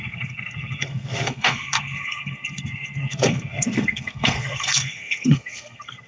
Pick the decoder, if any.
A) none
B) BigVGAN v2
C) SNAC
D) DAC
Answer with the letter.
C